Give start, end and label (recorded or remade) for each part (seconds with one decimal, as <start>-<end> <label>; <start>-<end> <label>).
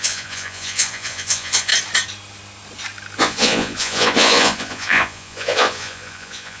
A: 0.0-1.7 remade; 1.7-3.2 recorded; 3.2-6.6 remade